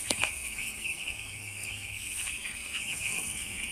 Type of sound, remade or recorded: remade